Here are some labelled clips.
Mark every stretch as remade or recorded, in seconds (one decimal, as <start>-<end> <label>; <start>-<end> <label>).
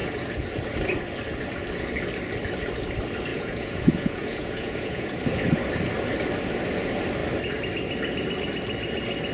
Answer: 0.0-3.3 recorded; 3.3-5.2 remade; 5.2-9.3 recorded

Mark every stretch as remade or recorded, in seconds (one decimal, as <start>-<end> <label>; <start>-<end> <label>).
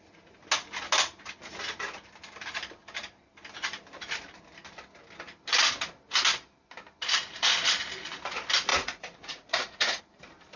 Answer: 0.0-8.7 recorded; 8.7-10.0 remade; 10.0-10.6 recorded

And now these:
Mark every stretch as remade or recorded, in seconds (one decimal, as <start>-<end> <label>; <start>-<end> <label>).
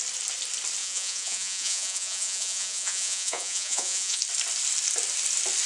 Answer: 0.0-0.8 recorded; 0.8-4.2 remade; 4.2-5.7 recorded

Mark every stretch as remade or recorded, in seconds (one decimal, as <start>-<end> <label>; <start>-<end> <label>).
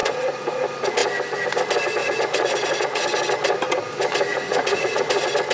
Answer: 0.0-0.6 remade; 0.6-2.0 recorded; 2.0-3.0 remade; 3.0-4.3 recorded; 4.3-5.1 remade; 5.1-5.5 recorded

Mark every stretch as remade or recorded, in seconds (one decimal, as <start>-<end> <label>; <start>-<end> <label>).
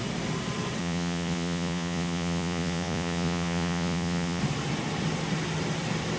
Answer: 0.0-0.8 recorded; 0.8-4.4 remade; 4.4-6.2 recorded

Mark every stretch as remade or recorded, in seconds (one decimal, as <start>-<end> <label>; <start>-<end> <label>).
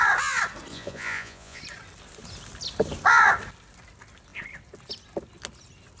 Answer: 0.0-0.7 recorded; 0.7-1.6 remade; 1.6-6.0 recorded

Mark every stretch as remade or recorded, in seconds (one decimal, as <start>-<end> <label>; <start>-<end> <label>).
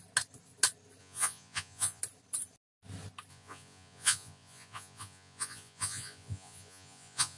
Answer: 0.0-1.0 recorded; 1.0-2.0 remade; 2.0-3.3 recorded; 3.3-7.4 remade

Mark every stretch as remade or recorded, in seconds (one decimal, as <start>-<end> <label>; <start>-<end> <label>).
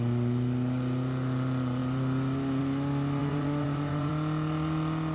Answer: 0.0-3.2 recorded; 3.2-4.1 remade; 4.1-5.1 recorded